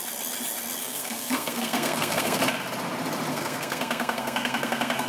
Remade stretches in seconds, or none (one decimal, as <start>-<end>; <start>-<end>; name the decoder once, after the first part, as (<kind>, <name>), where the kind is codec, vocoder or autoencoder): 0.8-2.4 (codec, SNAC); 3.3-5.1

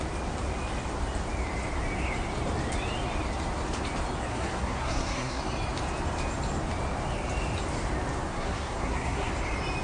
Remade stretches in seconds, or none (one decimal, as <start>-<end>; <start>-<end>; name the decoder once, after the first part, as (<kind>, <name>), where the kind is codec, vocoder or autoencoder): 4.3-5.4 (codec, SNAC); 8.3-9.3

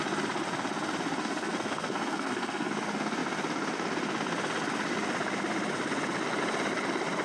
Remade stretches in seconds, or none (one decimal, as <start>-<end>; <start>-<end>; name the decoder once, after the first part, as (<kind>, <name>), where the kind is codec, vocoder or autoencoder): 1.2-2.7 (codec, SNAC)